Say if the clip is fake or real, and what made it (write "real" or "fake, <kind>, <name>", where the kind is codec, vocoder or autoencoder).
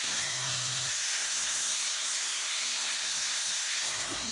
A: fake, codec, SNAC